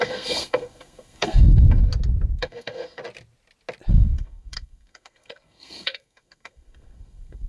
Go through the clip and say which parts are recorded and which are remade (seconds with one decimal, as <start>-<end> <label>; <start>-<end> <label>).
0.0-1.9 remade; 1.9-2.4 recorded; 2.4-3.0 remade; 3.0-3.9 recorded; 3.9-7.5 remade